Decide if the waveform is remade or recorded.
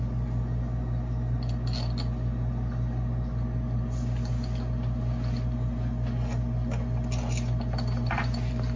recorded